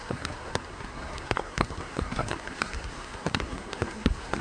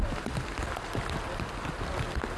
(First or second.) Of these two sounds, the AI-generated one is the first